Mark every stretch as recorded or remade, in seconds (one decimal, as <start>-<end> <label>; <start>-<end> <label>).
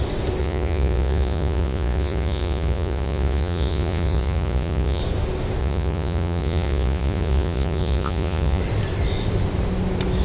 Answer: 0.0-0.4 recorded; 0.4-5.0 remade; 5.0-5.6 recorded; 5.6-8.6 remade; 8.6-10.2 recorded